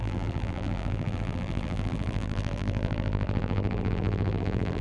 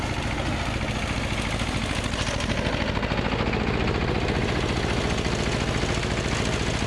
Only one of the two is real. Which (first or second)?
second